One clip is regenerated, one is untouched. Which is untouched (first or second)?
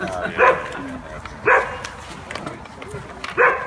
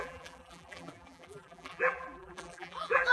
first